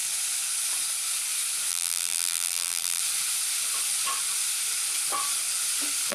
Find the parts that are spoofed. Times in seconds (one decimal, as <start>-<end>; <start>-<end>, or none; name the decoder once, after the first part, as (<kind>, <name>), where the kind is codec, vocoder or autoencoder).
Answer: 1.7-3.0 (vocoder, BigVGAN v2)